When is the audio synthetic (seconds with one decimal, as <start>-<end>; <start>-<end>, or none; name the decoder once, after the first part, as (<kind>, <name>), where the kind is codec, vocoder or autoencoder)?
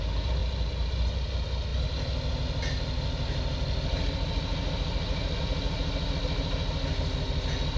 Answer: none